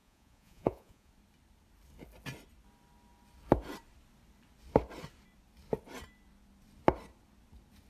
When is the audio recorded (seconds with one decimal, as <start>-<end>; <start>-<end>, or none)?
1.1-7.9